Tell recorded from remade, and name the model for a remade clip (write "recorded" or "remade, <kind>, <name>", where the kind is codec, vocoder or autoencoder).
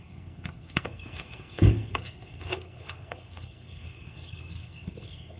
remade, codec, SNAC